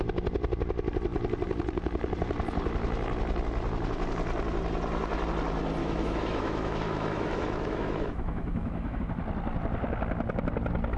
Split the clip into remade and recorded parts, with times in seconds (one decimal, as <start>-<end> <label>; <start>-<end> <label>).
0.0-5.8 recorded; 5.8-9.0 remade; 9.0-11.0 recorded